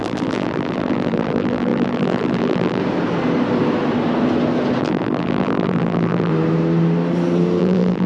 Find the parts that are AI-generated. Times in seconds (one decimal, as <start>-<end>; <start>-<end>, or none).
0.0-2.8; 4.8-6.3; 7.6-8.1